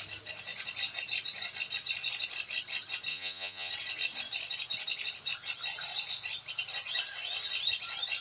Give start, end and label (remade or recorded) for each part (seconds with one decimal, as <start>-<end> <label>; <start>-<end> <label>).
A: 0.0-3.1 recorded; 3.1-3.7 remade; 3.7-8.2 recorded